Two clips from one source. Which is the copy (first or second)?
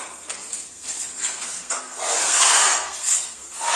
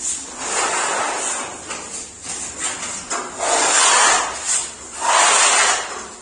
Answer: first